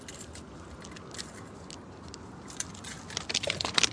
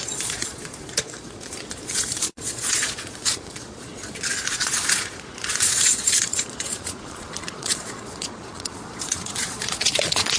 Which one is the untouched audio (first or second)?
first